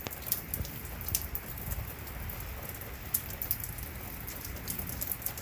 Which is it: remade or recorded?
recorded